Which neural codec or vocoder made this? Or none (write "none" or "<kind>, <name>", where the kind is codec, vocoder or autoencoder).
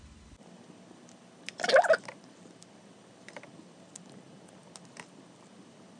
none